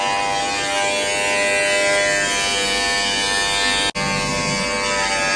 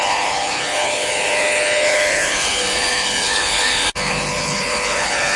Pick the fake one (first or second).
second